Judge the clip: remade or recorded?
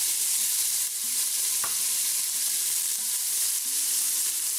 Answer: remade